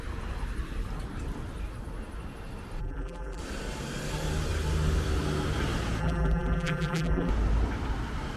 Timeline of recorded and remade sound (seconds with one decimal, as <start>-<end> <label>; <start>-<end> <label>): 0.0-2.8 recorded; 2.8-3.4 remade; 3.4-6.0 recorded; 6.0-7.3 remade; 7.3-8.4 recorded